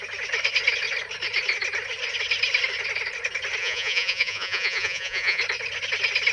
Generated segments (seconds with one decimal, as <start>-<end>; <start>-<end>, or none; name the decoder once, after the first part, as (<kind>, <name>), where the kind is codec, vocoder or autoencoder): 3.6-5.4 (vocoder, Vocos)